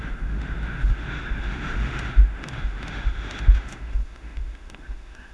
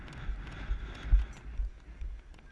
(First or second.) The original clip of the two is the second